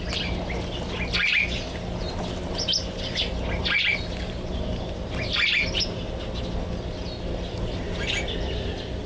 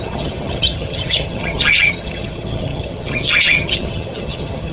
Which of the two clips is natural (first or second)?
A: first